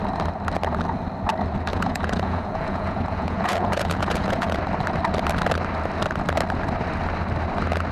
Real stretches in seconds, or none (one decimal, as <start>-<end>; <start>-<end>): 0.0-1.7; 4.6-7.9